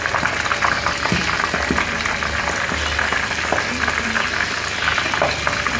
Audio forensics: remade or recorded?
recorded